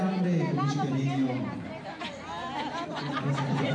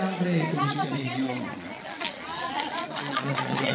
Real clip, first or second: first